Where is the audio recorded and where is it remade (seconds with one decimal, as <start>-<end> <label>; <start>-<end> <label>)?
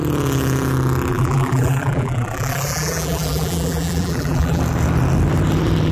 0.0-1.1 recorded; 1.1-4.6 remade; 4.6-5.9 recorded